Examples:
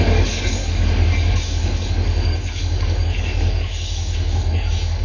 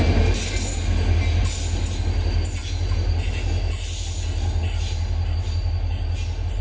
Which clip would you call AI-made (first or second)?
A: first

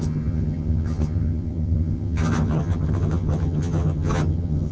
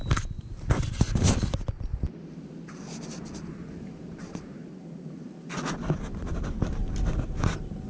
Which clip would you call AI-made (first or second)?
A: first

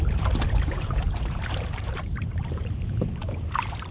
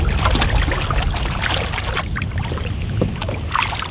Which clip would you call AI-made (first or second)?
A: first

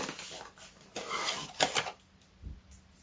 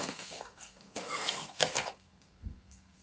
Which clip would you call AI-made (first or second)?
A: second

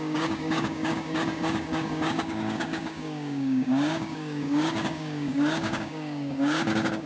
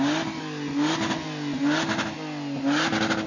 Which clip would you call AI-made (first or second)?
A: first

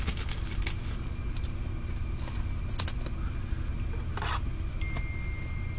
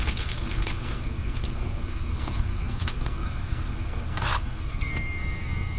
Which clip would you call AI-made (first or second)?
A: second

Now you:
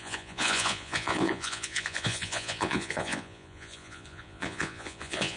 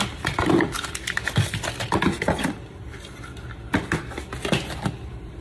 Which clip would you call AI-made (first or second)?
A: first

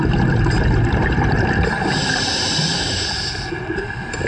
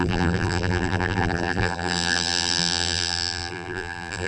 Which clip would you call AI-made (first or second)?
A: second